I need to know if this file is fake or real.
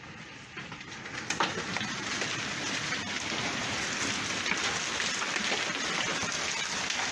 real